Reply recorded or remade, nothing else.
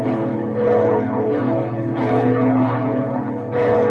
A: remade